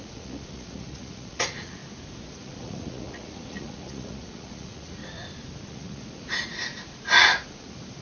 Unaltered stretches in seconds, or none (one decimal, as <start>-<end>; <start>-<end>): 1.8-2.3; 5.0-5.7